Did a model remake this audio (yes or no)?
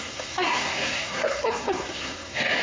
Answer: yes